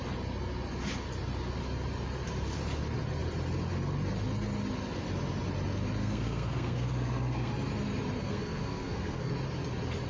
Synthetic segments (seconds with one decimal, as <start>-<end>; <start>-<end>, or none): 6.0-7.5; 8.2-9.3